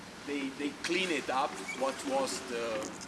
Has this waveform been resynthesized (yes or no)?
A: no